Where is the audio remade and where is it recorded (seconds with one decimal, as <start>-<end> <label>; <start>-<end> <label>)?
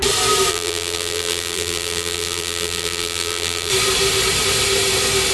0.0-0.5 recorded; 0.5-3.7 remade; 3.7-5.3 recorded